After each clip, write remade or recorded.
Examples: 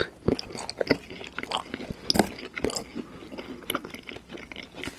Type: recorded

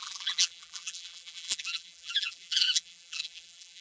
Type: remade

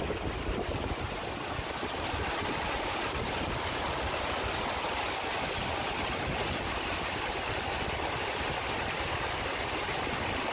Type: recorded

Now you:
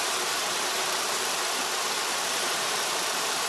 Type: remade